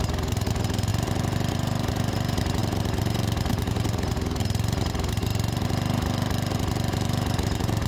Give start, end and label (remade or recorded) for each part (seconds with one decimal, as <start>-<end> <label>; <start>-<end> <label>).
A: 0.0-0.9 remade; 0.9-1.5 recorded; 1.5-5.3 remade; 5.3-6.9 recorded; 6.9-7.9 remade